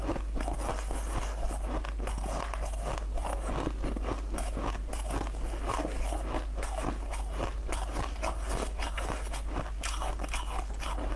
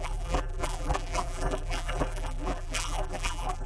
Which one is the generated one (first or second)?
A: second